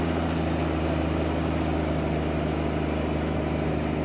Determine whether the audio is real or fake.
real